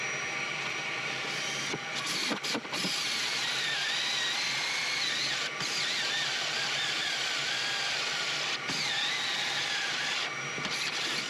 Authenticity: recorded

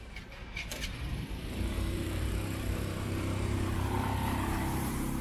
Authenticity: remade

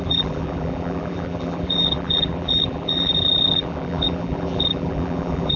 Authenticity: remade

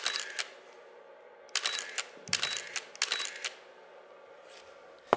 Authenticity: recorded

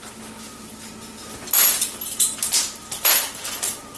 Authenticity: recorded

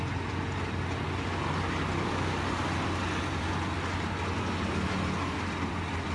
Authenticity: recorded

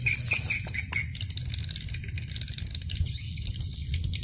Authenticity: recorded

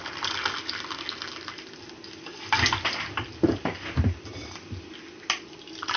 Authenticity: recorded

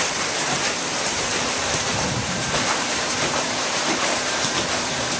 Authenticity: remade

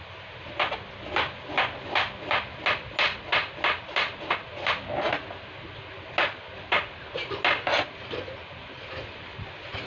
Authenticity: recorded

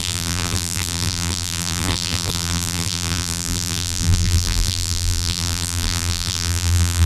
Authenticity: remade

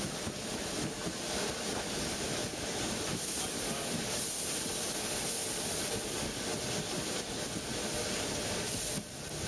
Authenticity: recorded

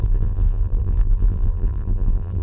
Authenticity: remade